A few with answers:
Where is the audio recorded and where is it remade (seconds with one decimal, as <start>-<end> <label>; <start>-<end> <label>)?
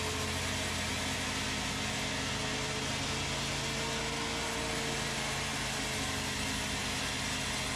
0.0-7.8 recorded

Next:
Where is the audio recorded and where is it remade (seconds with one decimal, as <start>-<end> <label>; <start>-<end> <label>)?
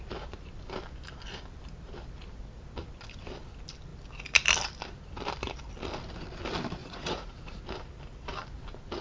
0.0-6.8 recorded; 6.8-7.6 remade; 7.6-9.0 recorded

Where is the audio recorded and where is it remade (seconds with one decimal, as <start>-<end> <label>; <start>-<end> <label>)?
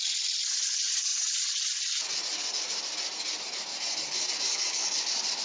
0.0-5.4 recorded